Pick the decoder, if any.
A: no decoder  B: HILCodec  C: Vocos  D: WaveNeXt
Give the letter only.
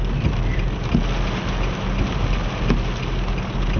A